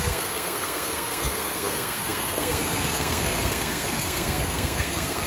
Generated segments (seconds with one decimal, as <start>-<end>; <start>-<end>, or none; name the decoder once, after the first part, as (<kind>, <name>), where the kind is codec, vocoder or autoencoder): 0.0-5.3 (codec, SNAC)